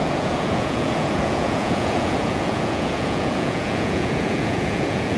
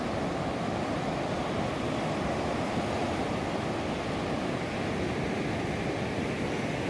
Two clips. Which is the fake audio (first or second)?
first